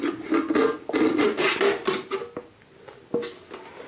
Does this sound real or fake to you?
real